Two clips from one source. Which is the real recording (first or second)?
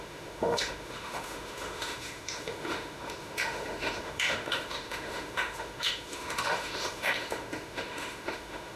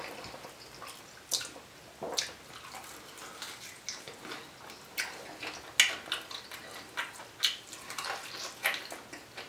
second